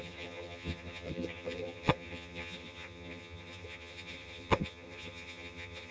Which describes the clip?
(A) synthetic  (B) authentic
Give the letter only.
A